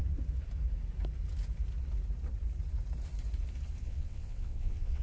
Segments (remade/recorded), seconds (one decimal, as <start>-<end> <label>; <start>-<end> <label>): 0.0-3.8 recorded; 3.8-5.0 remade